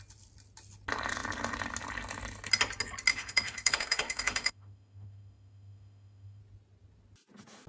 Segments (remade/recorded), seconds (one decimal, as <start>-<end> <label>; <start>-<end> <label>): 0.0-3.1 recorded; 3.1-6.4 remade; 6.4-7.7 recorded